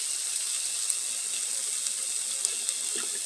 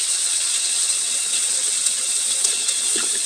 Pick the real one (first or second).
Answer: first